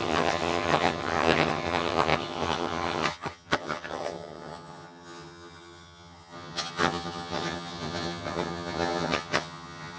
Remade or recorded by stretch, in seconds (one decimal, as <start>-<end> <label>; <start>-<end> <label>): 0.0-10.0 remade